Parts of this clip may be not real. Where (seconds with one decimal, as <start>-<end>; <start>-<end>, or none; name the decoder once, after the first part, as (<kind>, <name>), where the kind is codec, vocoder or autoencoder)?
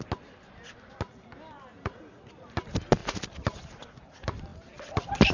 none